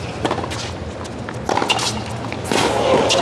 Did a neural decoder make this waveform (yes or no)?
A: no